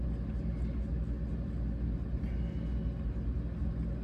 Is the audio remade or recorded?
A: recorded